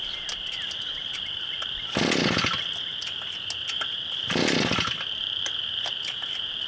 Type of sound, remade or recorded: recorded